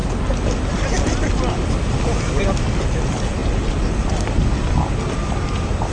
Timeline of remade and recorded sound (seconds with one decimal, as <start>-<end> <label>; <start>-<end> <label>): 0.0-5.9 recorded